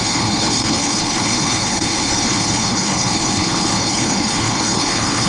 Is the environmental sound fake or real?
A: fake